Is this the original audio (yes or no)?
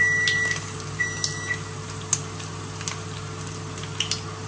yes